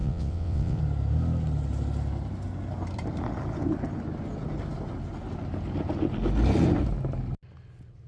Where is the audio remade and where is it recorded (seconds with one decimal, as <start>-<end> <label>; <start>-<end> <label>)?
0.0-0.8 remade; 0.8-8.1 recorded